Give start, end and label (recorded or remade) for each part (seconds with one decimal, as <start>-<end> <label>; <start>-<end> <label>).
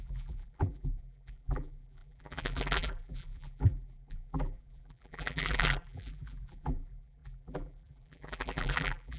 0.0-9.2 remade